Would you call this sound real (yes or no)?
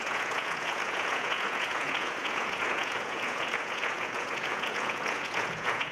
no